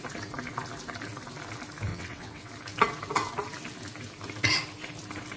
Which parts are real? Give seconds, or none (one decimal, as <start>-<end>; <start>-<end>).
0.0-1.9; 2.5-5.4